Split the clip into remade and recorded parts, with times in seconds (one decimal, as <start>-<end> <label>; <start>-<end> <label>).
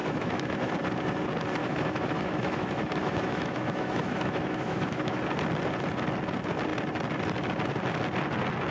0.0-0.7 remade; 0.7-1.6 recorded; 1.6-5.2 remade; 5.2-8.7 recorded